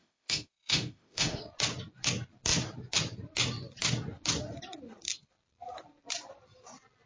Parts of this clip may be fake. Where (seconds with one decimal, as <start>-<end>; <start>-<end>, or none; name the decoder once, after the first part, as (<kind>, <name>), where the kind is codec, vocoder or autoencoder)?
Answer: 0.0-1.4 (autoencoder, DAC-VAE)